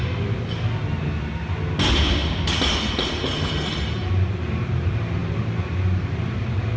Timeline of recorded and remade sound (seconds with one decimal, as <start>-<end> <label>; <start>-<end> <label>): 0.0-6.8 recorded